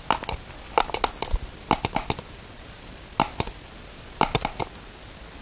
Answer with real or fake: real